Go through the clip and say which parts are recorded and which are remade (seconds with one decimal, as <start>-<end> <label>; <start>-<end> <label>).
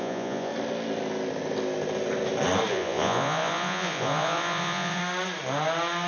0.0-0.5 remade; 0.5-2.7 recorded; 2.7-5.0 remade; 5.0-6.1 recorded